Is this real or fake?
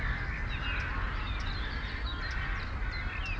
real